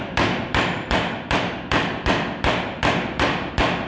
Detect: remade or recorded remade